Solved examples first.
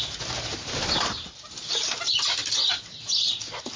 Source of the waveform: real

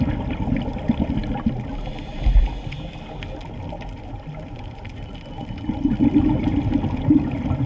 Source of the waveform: real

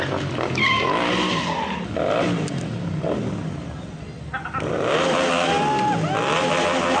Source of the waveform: real